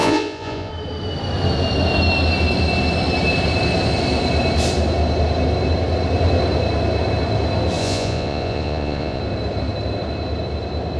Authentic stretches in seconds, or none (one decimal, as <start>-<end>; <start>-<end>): 0.7-7.8; 9.2-11.0